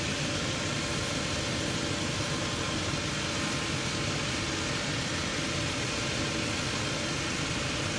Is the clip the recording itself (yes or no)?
yes